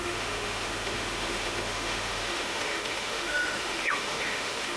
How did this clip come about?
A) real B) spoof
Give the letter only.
B